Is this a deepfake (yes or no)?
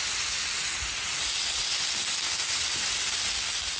no